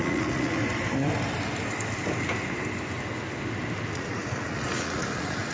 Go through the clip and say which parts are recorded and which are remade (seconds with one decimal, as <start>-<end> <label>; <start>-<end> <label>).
0.0-0.6 remade; 0.6-3.9 recorded; 3.9-5.5 remade